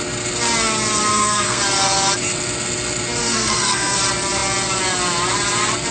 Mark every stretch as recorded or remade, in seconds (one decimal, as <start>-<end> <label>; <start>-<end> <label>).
0.0-1.1 recorded; 1.1-1.6 remade; 1.6-3.2 recorded; 3.2-4.0 remade; 4.0-5.9 recorded